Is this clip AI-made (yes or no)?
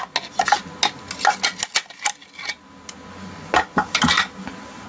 no